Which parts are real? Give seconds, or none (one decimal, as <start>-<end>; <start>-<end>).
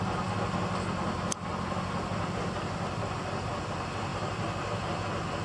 0.0-5.4